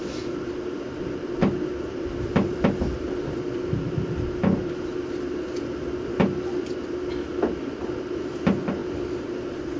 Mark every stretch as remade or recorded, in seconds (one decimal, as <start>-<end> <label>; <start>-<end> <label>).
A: 0.0-9.8 recorded